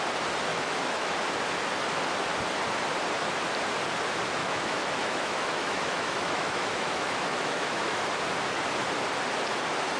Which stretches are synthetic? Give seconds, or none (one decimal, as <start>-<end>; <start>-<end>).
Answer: 0.5-1.2; 4.4-8.0